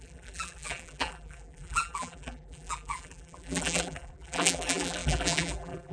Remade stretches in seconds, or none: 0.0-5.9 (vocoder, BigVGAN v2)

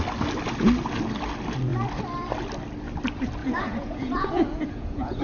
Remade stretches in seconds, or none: 3.4-5.2 (vocoder, Vocos)

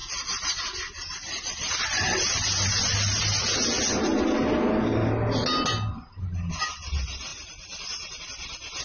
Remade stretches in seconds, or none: 0.0-2.3 (vocoder, BigVGAN v2); 7.3-8.2

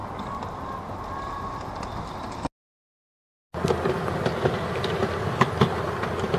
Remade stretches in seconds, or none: none